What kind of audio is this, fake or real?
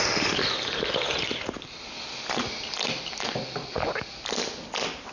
real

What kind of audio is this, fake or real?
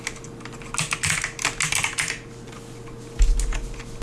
real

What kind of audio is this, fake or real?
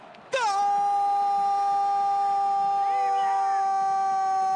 real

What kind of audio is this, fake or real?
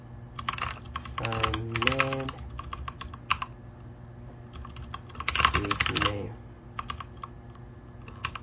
real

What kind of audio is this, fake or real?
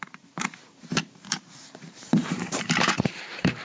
fake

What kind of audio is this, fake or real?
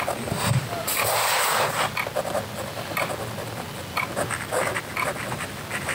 real